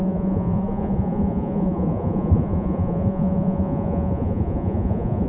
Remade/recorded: remade